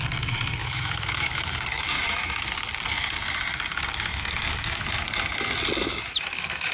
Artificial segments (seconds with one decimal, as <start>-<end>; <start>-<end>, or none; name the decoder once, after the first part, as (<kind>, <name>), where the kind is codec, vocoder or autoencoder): 0.6-2.5 (autoencoder, DAC-VAE); 4.1-5.0; 5.8-6.7